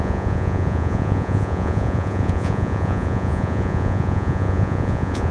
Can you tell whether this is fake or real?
fake